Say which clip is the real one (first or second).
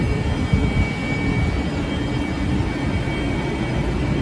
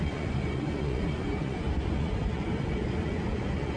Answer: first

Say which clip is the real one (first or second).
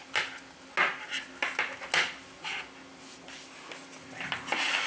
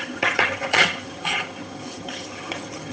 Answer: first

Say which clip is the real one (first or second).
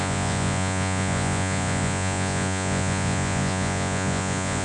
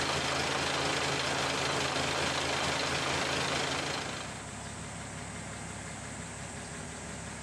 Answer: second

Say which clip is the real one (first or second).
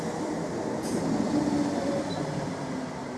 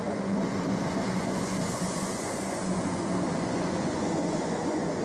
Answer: first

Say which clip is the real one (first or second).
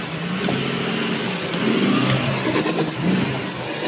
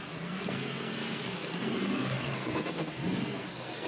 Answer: first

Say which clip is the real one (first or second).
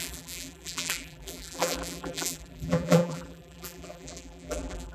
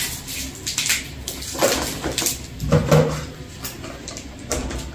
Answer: second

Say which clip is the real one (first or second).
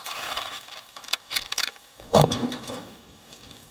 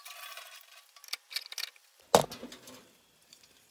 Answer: second